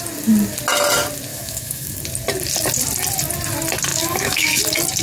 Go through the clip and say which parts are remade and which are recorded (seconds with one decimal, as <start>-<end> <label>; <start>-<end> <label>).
0.0-1.3 recorded; 1.3-2.0 remade; 2.0-3.9 recorded; 3.9-4.6 remade; 4.6-5.0 recorded